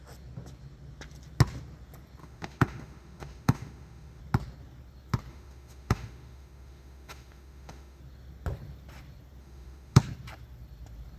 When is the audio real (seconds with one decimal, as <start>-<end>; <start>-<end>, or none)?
0.0-2.2; 4.2-5.3; 8.0-9.4; 10.0-11.2